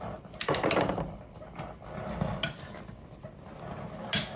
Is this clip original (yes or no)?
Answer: yes